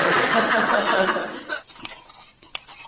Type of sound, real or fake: fake